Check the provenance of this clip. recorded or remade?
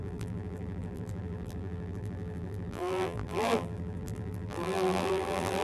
remade